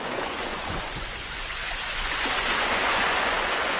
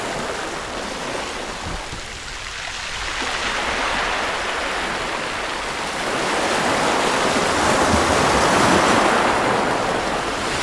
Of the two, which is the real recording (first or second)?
second